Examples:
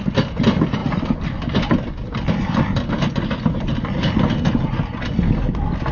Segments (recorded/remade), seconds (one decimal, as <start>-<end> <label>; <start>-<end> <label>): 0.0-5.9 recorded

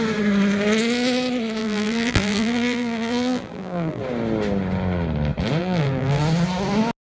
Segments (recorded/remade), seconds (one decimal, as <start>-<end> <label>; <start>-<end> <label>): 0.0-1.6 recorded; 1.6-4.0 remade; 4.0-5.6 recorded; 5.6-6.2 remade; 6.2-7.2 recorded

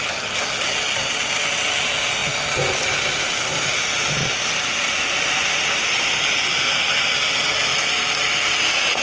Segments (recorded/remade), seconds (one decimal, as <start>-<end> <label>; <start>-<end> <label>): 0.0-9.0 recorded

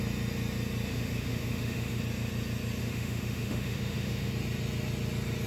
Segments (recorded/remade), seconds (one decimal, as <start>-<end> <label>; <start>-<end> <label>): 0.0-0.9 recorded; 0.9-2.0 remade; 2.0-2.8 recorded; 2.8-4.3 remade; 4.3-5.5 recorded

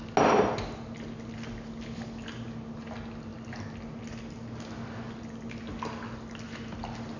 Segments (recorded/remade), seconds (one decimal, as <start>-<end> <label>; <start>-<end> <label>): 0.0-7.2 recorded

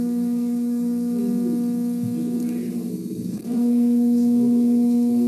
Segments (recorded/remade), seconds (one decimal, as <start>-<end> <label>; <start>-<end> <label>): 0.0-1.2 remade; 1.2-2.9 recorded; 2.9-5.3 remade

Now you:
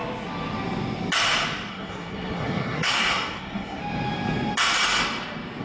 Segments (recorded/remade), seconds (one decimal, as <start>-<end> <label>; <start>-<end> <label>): 0.0-1.7 recorded; 1.7-3.8 remade; 3.8-5.6 recorded

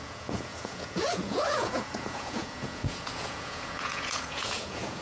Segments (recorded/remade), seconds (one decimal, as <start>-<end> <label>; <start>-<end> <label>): 0.0-5.0 remade